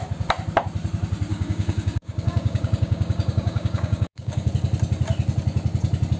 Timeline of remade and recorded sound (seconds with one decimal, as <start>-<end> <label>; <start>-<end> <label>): 0.0-1.3 recorded; 1.3-4.5 remade; 4.5-6.2 recorded